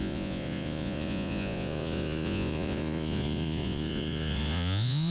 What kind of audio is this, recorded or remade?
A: remade